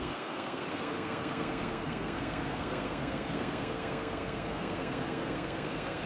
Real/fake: fake